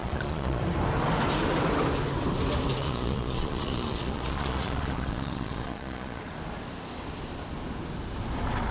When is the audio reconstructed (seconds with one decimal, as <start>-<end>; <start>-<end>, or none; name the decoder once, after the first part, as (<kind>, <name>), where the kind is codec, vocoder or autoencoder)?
0.0-0.6 (vocoder, Vocos); 2.8-6.2